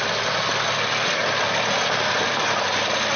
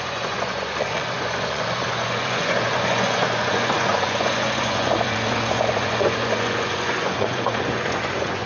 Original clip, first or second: first